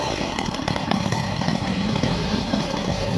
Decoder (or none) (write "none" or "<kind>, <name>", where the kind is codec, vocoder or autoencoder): codec, SNAC